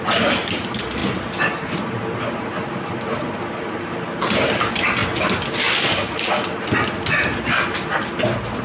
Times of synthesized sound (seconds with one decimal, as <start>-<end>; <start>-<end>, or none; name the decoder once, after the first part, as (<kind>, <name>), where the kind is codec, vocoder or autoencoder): none